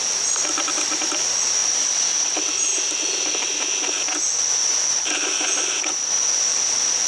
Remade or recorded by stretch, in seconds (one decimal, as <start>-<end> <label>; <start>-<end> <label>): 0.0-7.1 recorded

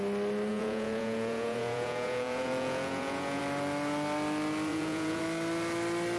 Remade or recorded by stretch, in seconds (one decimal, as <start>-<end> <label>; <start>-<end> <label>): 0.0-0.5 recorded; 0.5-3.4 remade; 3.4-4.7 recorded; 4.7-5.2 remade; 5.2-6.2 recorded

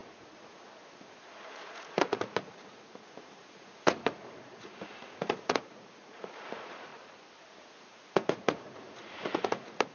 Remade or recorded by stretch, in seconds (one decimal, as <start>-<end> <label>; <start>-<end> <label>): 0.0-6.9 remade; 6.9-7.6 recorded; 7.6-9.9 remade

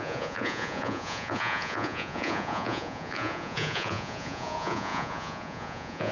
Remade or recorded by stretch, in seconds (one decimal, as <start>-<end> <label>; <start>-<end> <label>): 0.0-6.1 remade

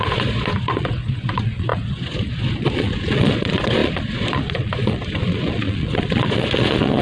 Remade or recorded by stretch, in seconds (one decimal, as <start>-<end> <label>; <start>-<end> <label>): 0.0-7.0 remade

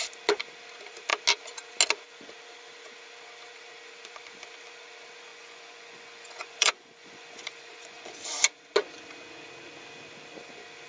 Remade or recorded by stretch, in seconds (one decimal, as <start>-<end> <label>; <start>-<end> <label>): 0.0-5.3 recorded; 5.3-8.2 remade; 8.2-10.9 recorded

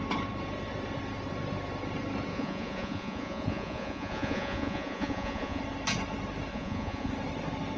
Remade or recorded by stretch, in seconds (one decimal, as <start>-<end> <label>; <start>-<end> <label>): 0.0-2.3 recorded; 2.3-5.6 remade; 5.6-6.5 recorded; 6.5-7.1 remade; 7.1-7.8 recorded